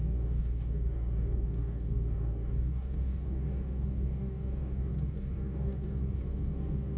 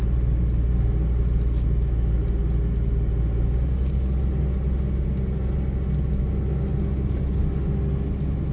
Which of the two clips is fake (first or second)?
first